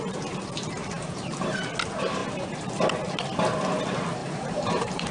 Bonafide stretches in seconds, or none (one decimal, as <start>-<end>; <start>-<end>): 0.0-0.8; 1.6-4.2